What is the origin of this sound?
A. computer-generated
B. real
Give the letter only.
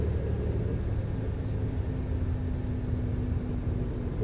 B